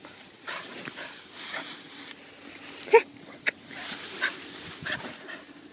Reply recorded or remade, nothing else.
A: recorded